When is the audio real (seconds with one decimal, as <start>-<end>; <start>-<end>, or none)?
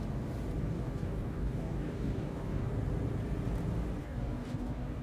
0.0-0.6; 2.7-4.0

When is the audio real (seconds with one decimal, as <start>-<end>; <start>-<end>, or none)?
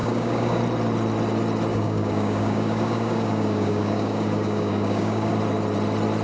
0.6-1.7; 5.4-6.2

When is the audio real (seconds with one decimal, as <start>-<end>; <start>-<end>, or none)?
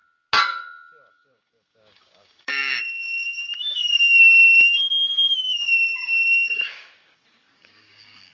0.0-1.1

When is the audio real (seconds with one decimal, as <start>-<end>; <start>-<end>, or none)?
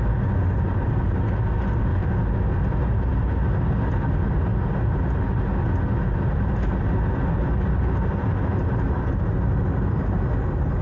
0.0-10.8